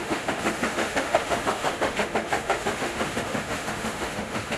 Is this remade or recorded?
remade